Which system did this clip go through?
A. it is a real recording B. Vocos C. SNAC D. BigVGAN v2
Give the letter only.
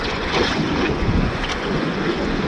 B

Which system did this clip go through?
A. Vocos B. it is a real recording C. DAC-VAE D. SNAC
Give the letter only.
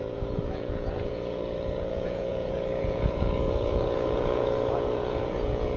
A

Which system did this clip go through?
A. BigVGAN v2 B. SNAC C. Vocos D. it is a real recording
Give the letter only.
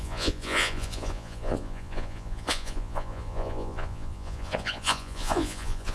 C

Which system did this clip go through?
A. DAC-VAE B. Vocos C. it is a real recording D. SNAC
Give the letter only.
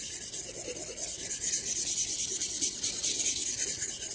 C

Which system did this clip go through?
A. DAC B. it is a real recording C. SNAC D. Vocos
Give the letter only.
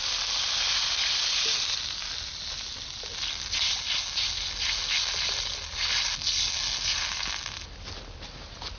B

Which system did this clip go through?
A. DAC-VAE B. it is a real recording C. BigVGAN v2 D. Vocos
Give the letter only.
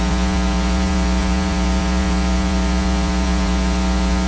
D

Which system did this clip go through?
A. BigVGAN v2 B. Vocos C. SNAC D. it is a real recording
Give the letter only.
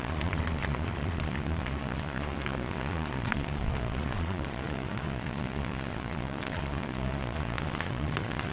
B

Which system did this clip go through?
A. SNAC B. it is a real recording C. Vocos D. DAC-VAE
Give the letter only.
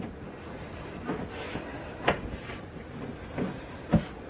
B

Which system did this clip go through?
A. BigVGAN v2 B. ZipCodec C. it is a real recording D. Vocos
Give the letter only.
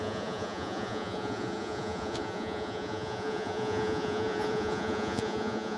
D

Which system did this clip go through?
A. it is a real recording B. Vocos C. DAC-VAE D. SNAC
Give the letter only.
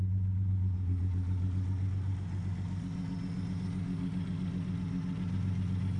A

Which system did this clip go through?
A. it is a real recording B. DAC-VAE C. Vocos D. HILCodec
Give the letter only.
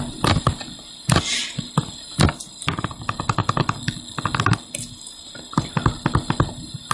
A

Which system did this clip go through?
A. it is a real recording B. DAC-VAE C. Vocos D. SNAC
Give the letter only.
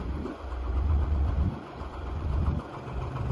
C